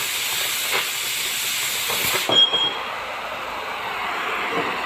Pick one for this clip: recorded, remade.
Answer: recorded